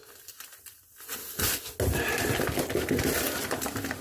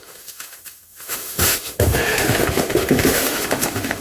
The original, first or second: first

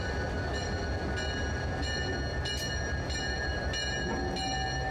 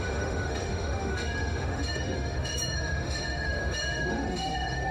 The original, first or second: first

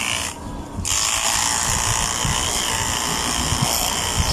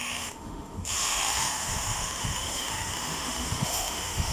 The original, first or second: first